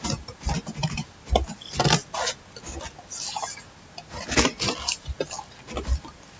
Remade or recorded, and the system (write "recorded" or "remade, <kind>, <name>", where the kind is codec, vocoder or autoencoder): recorded